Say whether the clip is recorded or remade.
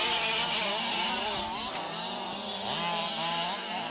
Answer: recorded